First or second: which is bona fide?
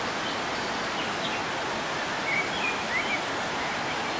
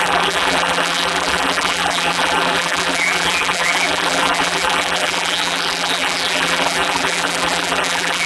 first